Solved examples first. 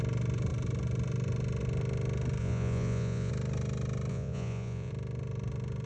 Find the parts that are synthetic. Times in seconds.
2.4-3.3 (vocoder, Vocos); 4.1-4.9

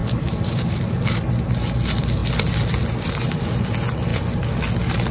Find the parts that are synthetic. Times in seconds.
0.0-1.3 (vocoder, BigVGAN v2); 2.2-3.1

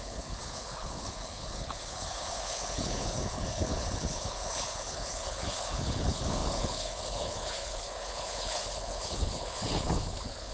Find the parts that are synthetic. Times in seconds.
0.0-10.5 (codec, HILCodec)